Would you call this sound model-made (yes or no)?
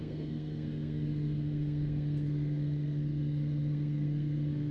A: yes